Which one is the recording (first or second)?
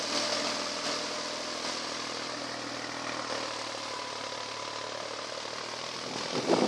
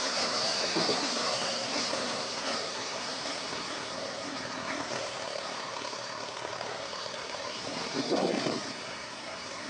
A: first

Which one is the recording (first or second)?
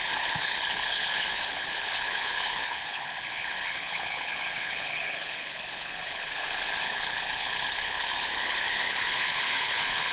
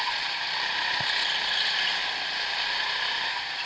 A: second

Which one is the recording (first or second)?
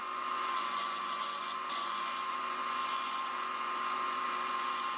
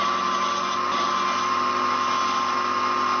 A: second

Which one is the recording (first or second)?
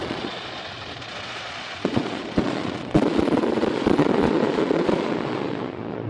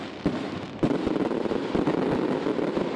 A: second